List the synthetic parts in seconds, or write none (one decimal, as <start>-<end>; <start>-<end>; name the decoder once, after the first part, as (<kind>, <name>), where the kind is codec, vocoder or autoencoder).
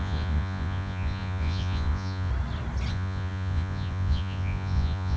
0.0-2.3 (vocoder, Vocos); 2.9-5.2